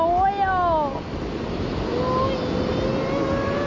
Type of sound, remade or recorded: recorded